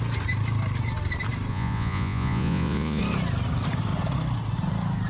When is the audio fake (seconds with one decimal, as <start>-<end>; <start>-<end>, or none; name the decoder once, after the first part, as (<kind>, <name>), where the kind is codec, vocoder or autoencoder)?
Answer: 1.5-3.0 (vocoder, Vocos)